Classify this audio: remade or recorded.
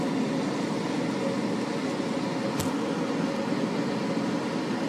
recorded